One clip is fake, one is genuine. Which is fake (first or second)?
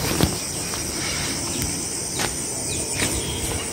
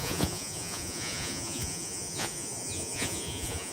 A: second